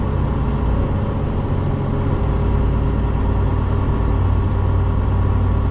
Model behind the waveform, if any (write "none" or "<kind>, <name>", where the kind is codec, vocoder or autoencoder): none